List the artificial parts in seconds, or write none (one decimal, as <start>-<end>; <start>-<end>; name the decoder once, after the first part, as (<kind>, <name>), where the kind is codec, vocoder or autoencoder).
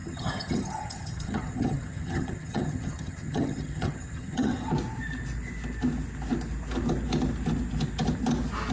0.0-4.7 (vocoder, HiFi-GAN)